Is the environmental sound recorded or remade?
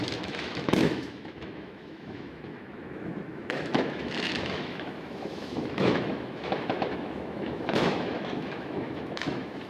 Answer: remade